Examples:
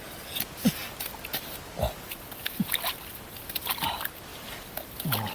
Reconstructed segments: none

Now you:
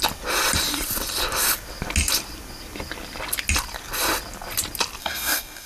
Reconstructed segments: 5.0-5.7 (codec, DAC)